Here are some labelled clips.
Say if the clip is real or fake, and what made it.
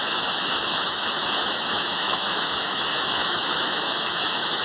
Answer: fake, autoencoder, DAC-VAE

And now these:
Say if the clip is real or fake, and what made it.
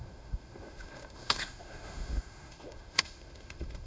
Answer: fake, autoencoder, DAC-VAE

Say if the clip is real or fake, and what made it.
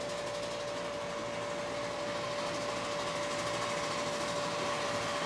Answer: real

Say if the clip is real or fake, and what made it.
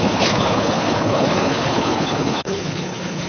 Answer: fake, codec, HILCodec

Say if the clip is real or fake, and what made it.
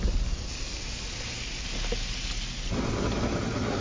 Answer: real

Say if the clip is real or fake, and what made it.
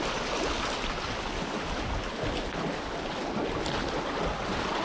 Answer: real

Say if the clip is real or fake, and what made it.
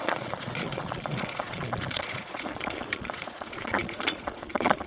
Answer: fake, vocoder, Vocos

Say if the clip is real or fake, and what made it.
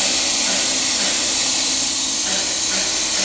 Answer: real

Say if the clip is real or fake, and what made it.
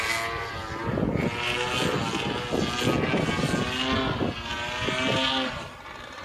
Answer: real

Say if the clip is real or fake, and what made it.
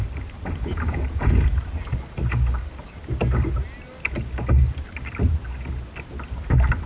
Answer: real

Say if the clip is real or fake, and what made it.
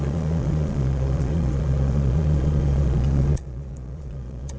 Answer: fake, vocoder, Vocos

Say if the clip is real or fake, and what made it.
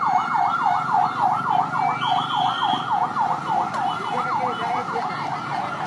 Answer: real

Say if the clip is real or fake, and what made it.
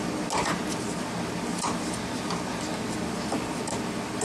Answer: real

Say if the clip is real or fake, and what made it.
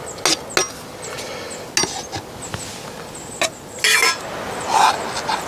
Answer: real